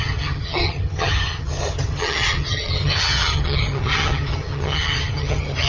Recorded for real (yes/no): no